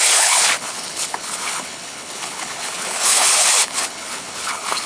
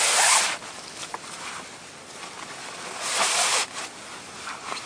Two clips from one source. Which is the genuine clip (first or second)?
second